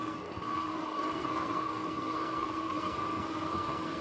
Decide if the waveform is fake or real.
fake